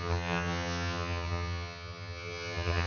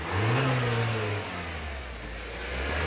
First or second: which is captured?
second